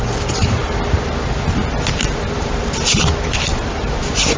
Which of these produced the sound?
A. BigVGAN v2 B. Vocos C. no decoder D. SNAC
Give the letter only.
C